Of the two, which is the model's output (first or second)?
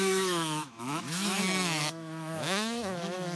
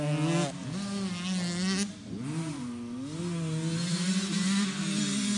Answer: first